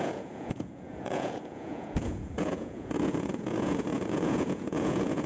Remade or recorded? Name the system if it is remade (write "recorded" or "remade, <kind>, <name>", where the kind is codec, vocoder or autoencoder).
remade, vocoder, Vocos